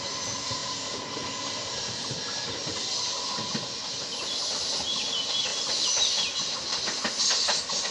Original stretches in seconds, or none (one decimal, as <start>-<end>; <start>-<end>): 0.0-7.9